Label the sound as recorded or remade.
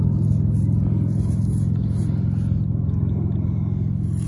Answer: recorded